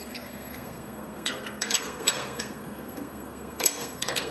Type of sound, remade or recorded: remade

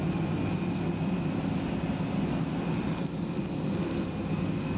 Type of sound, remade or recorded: recorded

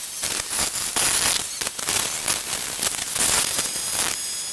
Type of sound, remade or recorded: recorded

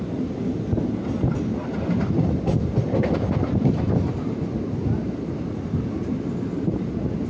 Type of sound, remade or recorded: recorded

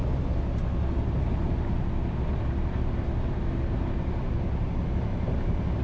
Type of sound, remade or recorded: recorded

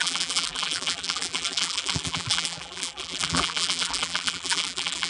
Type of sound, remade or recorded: remade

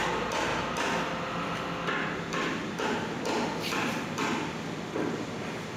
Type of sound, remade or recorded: recorded